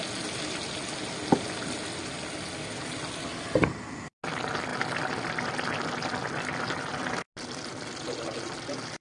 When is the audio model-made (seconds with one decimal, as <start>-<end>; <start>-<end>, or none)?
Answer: none